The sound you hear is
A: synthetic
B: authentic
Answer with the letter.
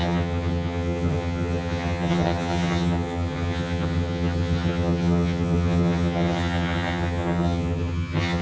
A